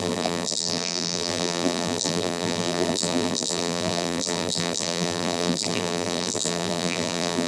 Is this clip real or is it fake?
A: fake